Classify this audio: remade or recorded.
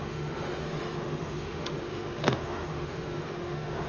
remade